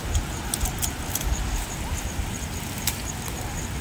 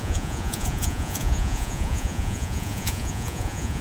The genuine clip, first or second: first